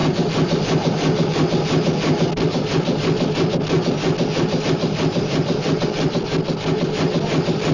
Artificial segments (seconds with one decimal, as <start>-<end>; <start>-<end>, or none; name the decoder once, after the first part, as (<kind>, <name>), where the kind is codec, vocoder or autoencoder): none